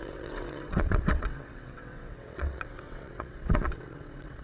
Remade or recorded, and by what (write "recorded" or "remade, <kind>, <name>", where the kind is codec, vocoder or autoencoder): remade, vocoder, WaveNeXt